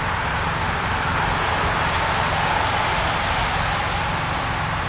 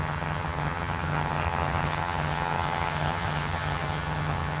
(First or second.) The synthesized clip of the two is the second